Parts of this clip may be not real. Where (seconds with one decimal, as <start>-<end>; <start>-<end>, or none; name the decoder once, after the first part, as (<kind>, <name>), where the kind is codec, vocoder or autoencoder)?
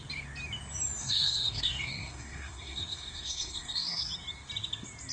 1.0-4.1 (codec, SNAC)